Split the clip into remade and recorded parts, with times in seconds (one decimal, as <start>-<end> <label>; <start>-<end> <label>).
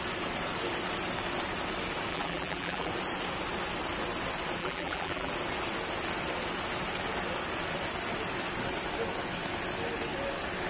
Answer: 0.0-2.1 recorded; 2.1-2.9 remade; 2.9-4.6 recorded; 4.6-5.3 remade; 5.3-10.7 recorded